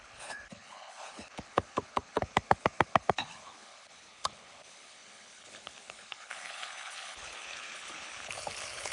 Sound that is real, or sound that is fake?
fake